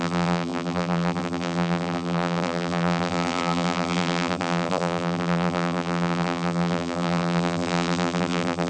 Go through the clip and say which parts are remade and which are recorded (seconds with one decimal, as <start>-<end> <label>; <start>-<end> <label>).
0.0-8.7 remade